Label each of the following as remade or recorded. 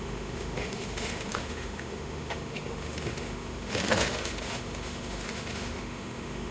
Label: remade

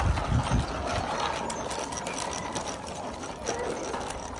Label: recorded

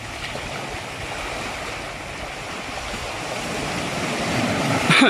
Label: recorded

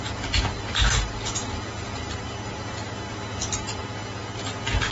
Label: recorded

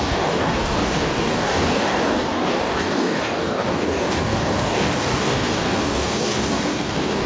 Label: remade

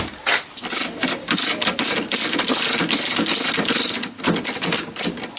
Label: recorded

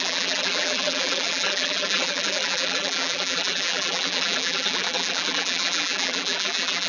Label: remade